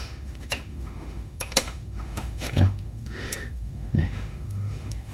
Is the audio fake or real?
fake